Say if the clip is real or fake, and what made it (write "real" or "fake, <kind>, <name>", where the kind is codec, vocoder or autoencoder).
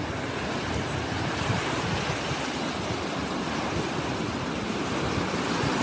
real